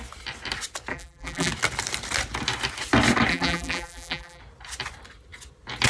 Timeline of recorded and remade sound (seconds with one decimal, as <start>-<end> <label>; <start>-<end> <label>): 0.0-0.9 recorded; 0.9-1.5 remade; 1.5-3.3 recorded; 3.3-4.4 remade; 4.4-5.9 recorded